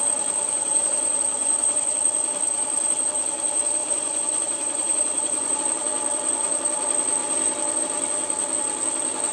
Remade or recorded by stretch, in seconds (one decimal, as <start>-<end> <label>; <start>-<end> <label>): 0.0-0.4 recorded; 0.4-0.9 remade; 0.9-1.4 recorded; 1.4-1.9 remade; 1.9-3.8 recorded; 3.8-5.6 remade; 5.6-9.3 recorded